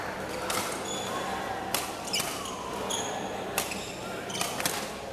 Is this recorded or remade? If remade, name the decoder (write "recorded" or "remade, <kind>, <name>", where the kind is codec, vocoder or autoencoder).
recorded